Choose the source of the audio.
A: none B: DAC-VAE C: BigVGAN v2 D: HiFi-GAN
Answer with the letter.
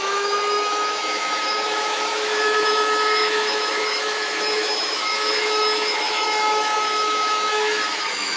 B